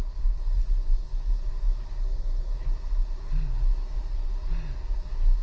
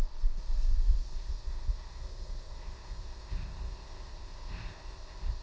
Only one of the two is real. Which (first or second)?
first